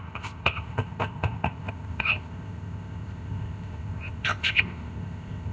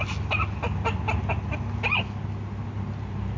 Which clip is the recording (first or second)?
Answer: second